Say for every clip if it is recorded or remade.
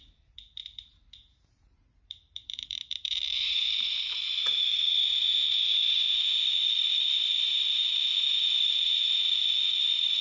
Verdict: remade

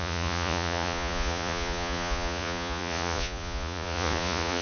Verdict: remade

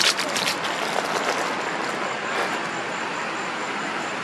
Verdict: remade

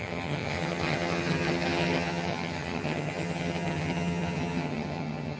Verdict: remade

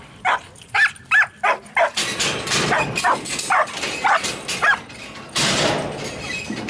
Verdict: recorded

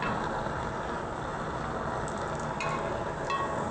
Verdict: recorded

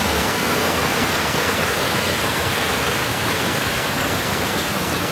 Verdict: remade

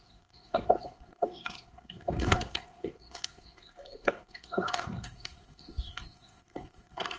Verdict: remade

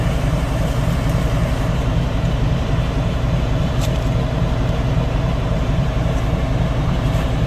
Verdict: remade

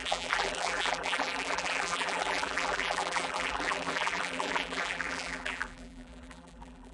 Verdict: remade